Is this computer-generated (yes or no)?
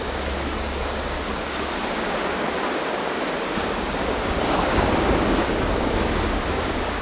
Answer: yes